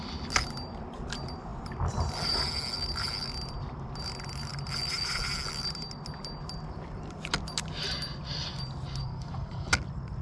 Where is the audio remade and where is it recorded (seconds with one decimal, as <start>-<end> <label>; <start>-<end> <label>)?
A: 0.0-9.0 recorded; 9.0-9.7 remade; 9.7-10.2 recorded